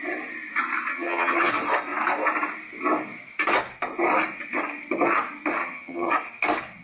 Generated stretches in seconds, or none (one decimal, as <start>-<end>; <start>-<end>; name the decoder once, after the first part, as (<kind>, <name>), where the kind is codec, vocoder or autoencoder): 0.9-1.5 (vocoder, HiFi-GAN); 5.6-6.1